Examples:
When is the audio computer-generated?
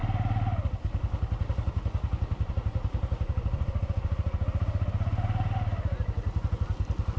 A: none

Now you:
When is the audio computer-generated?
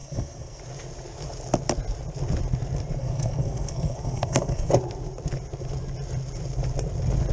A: 0.0-0.6 (codec, SNAC); 3.0-4.7